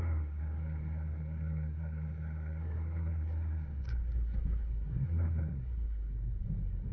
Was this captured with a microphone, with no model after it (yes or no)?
no